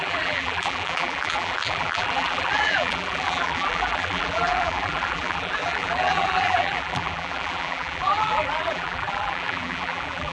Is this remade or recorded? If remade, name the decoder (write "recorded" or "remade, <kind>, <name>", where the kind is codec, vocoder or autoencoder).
remade, vocoder, BigVGAN v2